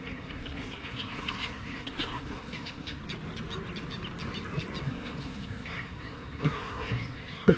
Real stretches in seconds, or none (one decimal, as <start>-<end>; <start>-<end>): 3.0-4.8